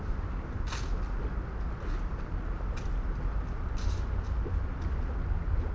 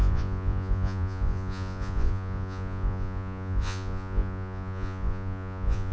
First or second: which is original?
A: first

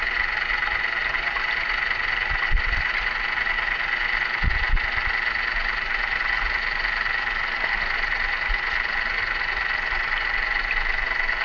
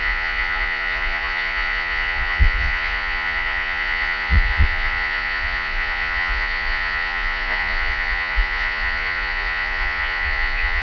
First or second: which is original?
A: first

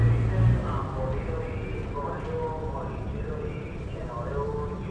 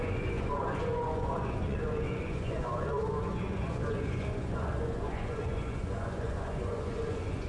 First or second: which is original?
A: first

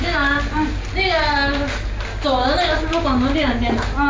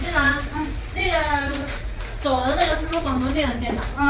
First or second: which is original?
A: first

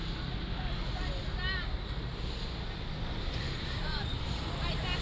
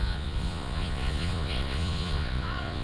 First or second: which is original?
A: first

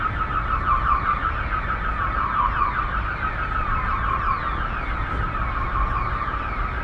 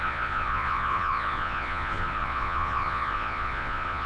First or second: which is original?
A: first